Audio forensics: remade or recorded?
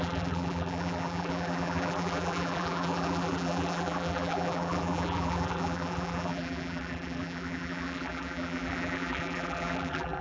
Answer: remade